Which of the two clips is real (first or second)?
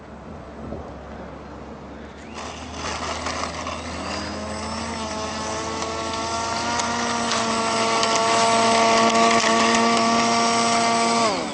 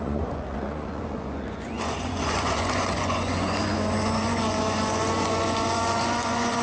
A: first